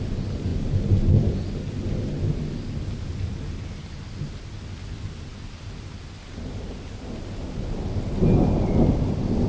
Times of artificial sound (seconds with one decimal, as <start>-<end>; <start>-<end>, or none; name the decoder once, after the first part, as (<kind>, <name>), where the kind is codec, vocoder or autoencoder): none